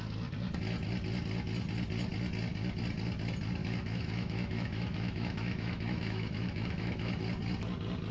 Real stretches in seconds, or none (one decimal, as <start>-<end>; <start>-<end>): 0.0-3.6; 7.2-8.1